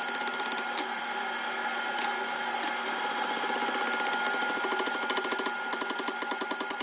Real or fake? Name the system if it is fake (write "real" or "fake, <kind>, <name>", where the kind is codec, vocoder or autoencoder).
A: real